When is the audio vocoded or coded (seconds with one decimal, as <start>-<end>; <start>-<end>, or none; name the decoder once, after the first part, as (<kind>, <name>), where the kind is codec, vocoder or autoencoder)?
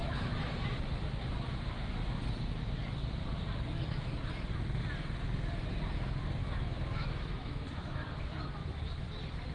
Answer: 0.0-0.6 (autoencoder, DAC-VAE); 6.4-8.4